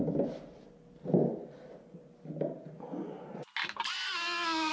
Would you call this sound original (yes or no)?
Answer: yes